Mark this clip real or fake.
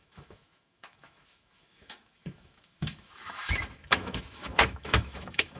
fake